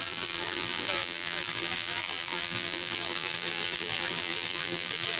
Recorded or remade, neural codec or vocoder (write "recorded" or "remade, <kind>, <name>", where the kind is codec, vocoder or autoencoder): remade, vocoder, BigVGAN v2